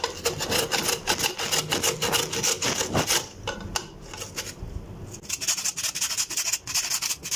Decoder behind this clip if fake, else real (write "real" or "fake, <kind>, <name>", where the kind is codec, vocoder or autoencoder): real